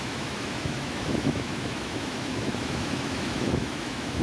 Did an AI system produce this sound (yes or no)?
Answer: yes